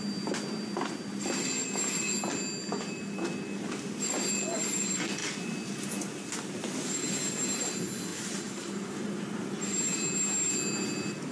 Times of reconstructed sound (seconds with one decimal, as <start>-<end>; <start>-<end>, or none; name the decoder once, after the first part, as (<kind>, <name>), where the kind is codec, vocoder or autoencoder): none